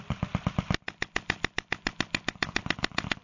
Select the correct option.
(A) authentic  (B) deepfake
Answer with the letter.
A